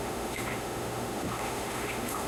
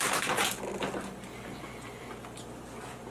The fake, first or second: first